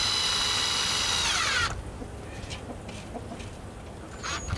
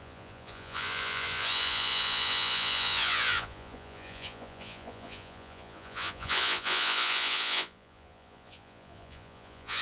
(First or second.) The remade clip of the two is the second